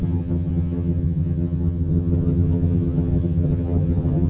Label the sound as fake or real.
fake